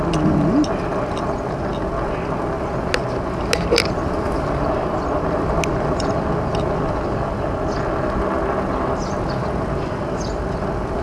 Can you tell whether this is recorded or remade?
recorded